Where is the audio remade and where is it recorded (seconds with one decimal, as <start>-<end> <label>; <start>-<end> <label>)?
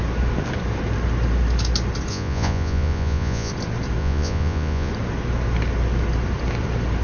0.0-2.1 recorded; 2.1-3.5 remade; 3.5-4.0 recorded; 4.0-4.9 remade; 4.9-7.0 recorded